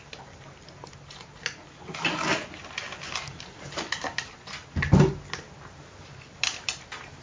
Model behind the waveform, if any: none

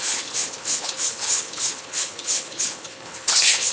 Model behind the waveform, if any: codec, HILCodec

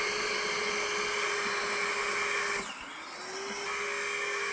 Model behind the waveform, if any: none